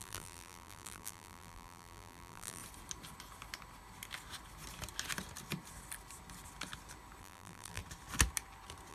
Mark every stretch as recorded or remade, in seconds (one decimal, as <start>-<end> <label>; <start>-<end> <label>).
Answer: 0.0-2.6 remade; 2.6-7.2 recorded; 7.2-7.8 remade; 7.8-8.9 recorded